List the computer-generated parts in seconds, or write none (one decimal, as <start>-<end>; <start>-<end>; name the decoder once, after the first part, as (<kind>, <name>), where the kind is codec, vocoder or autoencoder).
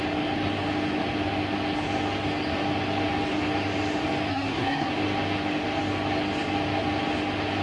4.3-4.9 (codec, SNAC)